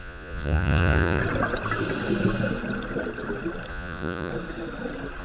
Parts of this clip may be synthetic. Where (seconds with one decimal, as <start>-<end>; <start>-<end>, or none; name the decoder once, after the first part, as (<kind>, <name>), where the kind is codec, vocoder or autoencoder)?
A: 0.0-1.2 (vocoder, Vocos); 3.7-4.3